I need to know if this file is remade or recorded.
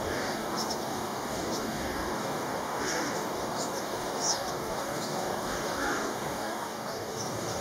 remade